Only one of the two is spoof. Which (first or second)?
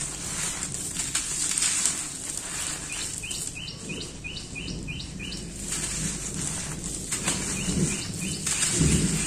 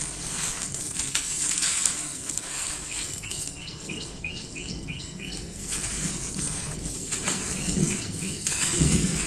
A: second